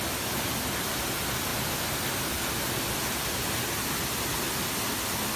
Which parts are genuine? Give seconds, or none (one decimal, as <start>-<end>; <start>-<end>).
0.0-5.4

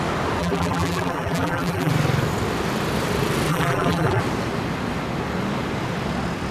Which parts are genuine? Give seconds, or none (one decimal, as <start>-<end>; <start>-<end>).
0.0-0.4; 1.9-3.5; 4.2-6.5

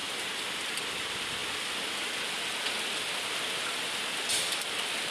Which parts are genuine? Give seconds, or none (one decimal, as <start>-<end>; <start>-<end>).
0.0-0.9

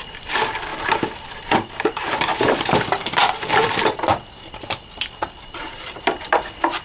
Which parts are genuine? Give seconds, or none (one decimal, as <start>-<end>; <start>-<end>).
0.7-1.3